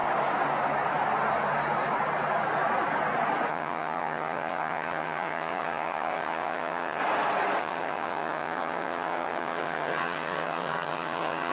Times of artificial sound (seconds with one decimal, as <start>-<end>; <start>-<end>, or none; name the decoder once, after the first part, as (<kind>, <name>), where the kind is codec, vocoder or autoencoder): 3.5-7.0 (vocoder, HiFi-GAN); 7.6-11.5